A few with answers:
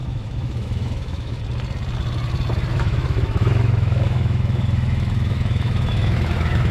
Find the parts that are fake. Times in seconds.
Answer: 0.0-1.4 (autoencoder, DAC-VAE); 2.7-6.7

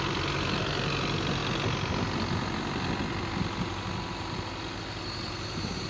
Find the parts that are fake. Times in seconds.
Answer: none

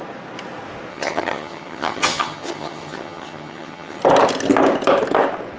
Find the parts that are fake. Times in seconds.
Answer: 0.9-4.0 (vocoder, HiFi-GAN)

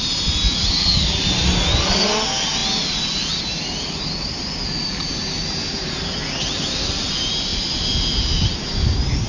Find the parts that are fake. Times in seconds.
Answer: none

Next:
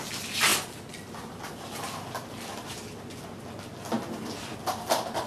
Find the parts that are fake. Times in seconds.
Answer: none

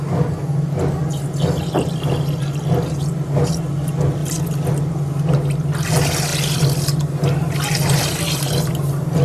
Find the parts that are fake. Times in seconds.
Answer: none